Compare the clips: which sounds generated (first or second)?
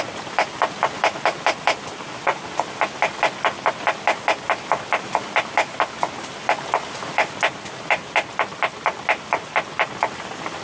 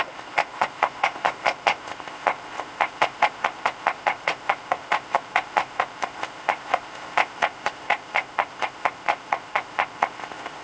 second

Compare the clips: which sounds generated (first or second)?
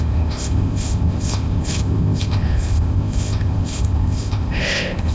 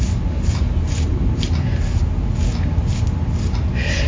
first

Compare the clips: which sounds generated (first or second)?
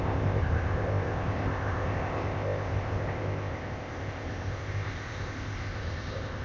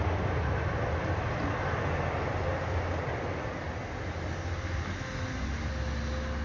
first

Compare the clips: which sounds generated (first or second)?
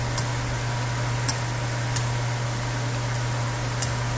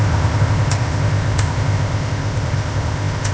second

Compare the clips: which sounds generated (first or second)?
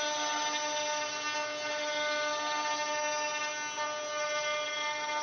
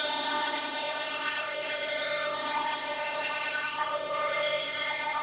second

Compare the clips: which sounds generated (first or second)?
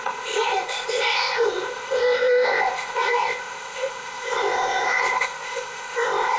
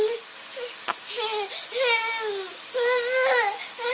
first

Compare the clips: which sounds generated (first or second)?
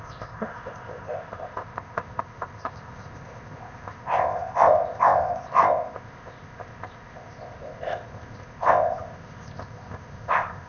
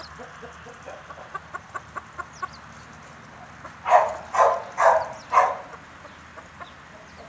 first